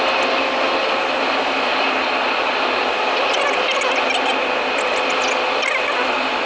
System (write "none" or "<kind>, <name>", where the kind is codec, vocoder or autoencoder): none